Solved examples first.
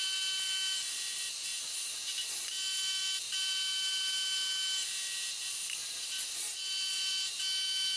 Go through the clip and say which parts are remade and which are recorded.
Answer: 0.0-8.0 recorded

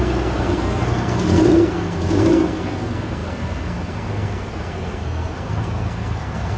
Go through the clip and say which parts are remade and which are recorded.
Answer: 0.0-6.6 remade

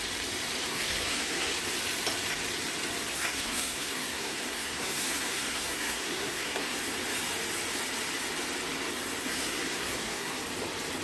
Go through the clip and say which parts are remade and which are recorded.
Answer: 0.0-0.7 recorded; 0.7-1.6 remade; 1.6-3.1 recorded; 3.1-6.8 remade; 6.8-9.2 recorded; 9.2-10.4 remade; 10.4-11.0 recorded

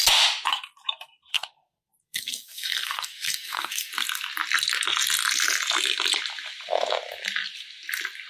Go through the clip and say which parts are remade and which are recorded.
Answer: 0.0-1.3 recorded; 1.3-3.9 remade; 3.9-8.3 recorded